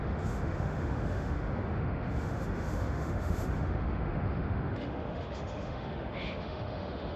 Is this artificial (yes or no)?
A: yes